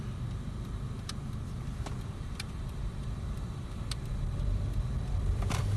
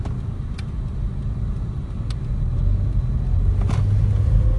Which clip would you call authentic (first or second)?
second